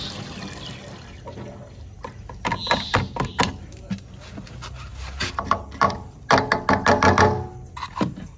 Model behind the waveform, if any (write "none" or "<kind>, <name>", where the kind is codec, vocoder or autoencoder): none